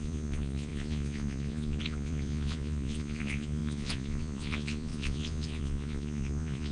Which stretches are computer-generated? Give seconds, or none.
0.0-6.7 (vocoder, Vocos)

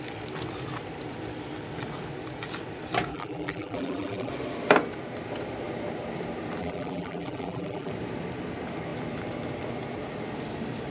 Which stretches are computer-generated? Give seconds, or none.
3.1-4.3 (vocoder, BigVGAN v2); 6.6-7.9

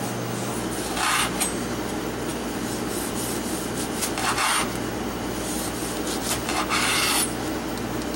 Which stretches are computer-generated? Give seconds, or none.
none

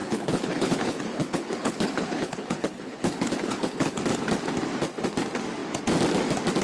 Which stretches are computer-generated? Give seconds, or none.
0.0-4.0 (codec, HILCodec)

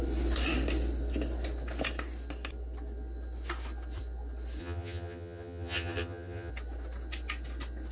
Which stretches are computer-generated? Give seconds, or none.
4.6-6.5 (vocoder, HiFi-GAN)

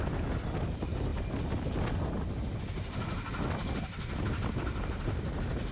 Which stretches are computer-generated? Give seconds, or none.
none

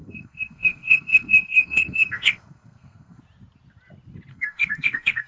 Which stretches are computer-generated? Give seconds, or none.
0.0-3.2 (codec, SNAC); 4.3-5.3